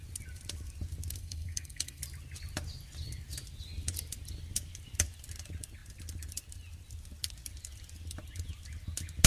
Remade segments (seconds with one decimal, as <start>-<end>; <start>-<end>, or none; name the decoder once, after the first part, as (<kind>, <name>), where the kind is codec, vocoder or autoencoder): 1.2-2.0 (codec, SNAC)